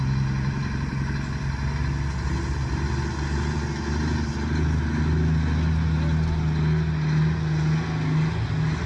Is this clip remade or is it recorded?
recorded